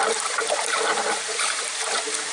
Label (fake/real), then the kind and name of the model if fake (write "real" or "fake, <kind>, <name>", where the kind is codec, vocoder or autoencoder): fake, vocoder, BigVGAN v2